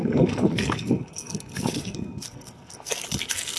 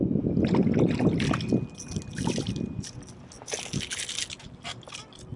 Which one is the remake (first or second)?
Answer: first